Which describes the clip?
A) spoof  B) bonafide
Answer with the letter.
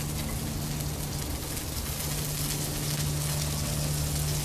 B